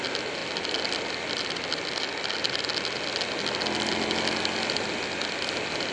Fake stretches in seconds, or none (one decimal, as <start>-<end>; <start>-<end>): none